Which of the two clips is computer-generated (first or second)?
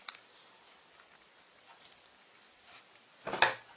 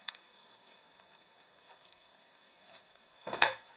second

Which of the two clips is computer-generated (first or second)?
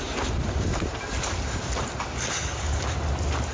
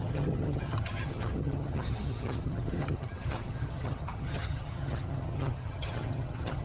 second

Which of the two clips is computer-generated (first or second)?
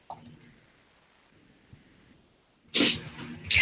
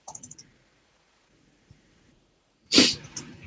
second